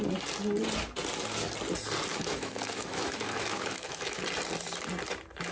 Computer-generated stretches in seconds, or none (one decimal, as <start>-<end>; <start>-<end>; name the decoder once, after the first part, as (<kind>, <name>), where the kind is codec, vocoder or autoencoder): 2.1-4.2 (autoencoder, DAC-VAE)